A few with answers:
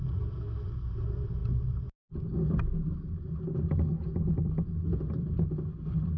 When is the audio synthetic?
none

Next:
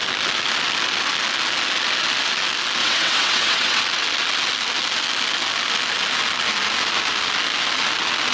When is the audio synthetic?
2.8-3.8

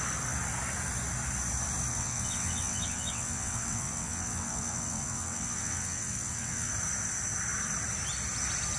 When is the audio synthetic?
1.9-6.7

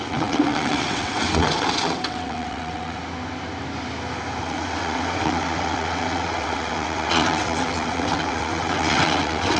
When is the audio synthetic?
0.0-3.0; 4.4-9.6

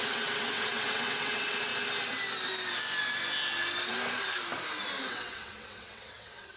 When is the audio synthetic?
0.0-1.7; 5.1-6.6

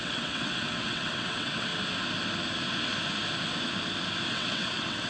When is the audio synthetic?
0.0-1.7; 4.3-5.1

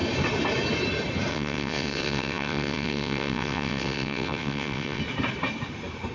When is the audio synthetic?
1.3-5.0

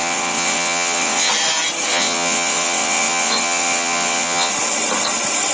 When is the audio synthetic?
0.0-1.3; 1.9-4.5